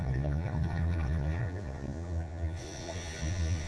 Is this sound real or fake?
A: fake